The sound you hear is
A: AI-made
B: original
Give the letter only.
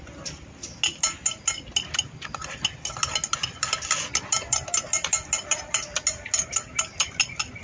B